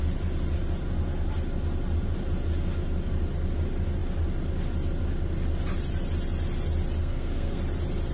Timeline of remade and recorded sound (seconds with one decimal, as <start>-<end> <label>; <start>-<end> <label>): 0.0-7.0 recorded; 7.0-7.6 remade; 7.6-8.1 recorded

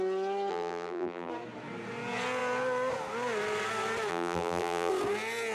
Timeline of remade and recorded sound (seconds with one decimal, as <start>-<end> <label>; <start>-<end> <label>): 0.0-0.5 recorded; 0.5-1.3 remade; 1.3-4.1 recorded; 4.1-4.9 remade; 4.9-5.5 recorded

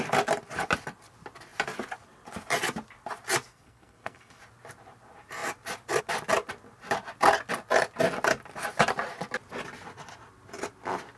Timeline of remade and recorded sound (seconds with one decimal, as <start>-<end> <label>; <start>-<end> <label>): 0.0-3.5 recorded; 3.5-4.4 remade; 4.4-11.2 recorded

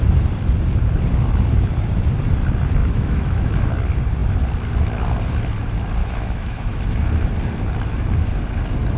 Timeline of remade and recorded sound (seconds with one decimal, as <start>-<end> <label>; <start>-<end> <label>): 0.0-2.8 recorded; 2.8-3.5 remade; 3.5-6.0 recorded; 6.0-6.8 remade; 6.8-9.0 recorded

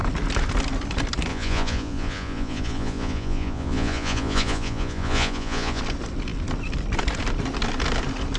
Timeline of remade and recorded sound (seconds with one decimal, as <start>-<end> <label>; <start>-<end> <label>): 0.0-1.3 recorded; 1.3-5.8 remade; 5.8-8.4 recorded

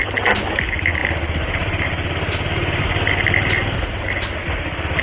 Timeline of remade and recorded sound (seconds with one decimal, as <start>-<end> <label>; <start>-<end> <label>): 0.0-5.0 recorded